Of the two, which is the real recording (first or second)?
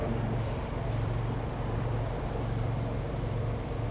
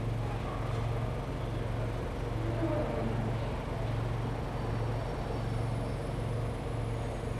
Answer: second